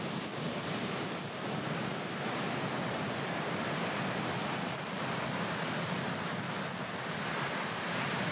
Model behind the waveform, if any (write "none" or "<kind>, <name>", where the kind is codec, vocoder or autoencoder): none